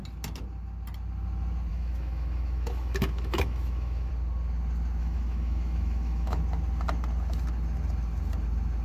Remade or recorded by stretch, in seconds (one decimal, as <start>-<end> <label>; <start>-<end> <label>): 0.0-1.7 recorded; 1.7-4.1 remade; 4.1-5.0 recorded; 5.0-6.4 remade; 6.4-8.8 recorded